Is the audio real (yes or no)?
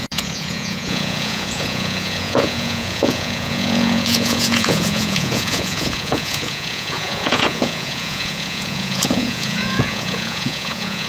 no